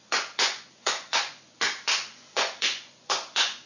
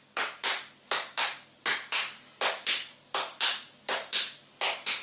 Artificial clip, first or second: first